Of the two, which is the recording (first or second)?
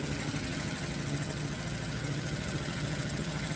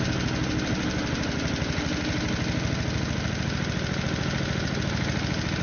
second